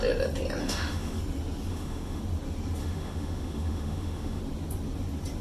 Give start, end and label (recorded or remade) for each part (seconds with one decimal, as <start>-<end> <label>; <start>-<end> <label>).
0.0-0.6 recorded; 0.6-1.2 remade; 1.2-1.7 recorded; 1.7-2.2 remade; 2.2-2.8 recorded; 2.8-4.4 remade; 4.4-5.4 recorded